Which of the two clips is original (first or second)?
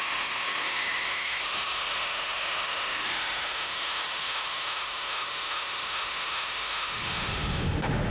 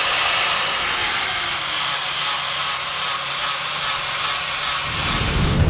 second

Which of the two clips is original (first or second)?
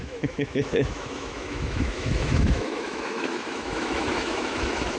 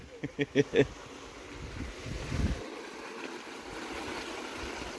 second